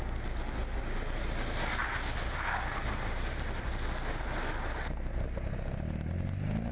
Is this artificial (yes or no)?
no